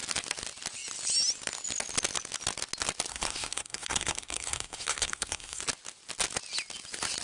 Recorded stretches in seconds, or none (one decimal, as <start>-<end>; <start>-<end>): 0.0-3.1; 5.6-7.2